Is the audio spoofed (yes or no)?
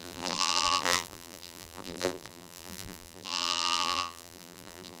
yes